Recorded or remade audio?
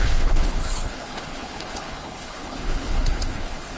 remade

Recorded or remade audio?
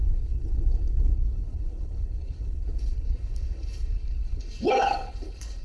remade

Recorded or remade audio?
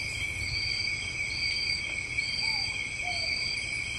recorded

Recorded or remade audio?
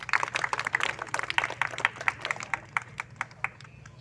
recorded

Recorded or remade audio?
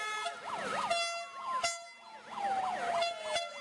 recorded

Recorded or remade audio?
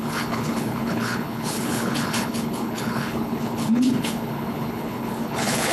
remade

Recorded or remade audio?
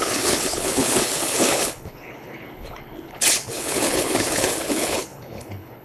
remade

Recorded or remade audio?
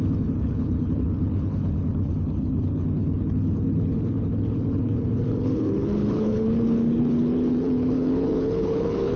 remade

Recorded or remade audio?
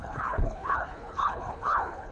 remade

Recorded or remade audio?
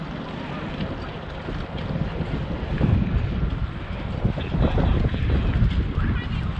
recorded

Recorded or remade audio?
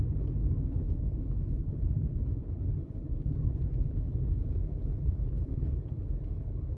remade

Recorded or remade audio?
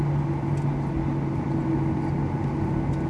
recorded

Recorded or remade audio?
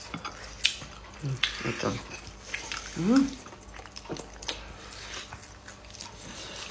recorded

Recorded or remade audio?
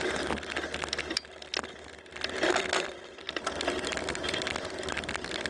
recorded